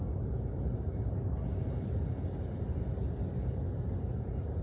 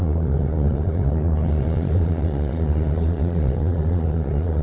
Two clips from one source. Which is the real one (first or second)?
first